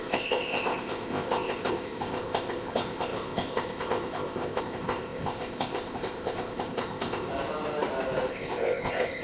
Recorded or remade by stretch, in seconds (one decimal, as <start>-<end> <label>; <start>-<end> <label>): 0.0-7.3 remade; 7.3-8.3 recorded; 8.3-9.2 remade